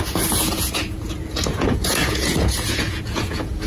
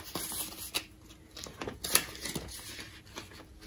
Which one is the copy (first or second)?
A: first